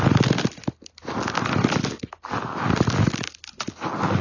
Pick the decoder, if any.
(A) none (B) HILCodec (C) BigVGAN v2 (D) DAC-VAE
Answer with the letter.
A